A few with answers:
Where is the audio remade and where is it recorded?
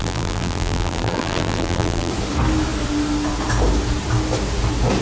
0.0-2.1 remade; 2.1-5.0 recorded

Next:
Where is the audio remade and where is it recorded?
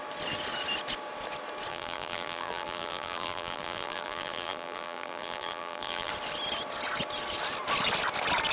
0.0-1.7 recorded; 1.7-6.1 remade; 6.1-8.5 recorded